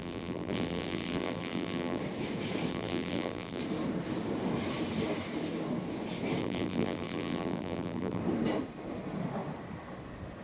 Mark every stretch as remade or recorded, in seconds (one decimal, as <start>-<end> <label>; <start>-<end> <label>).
0.0-2.0 remade; 2.0-2.7 recorded; 2.7-3.6 remade; 3.6-6.4 recorded; 6.4-8.2 remade; 8.2-10.4 recorded